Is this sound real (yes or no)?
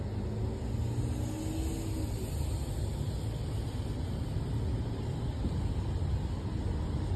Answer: yes